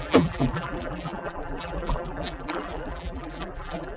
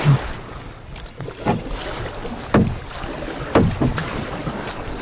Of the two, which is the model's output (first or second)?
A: first